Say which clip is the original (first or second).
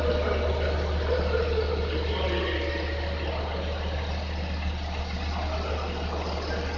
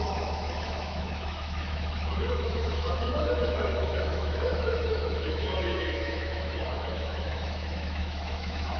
first